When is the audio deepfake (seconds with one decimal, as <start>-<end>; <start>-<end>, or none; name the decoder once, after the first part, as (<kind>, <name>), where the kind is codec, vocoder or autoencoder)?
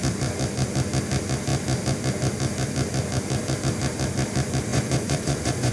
4.7-5.7 (vocoder, Vocos)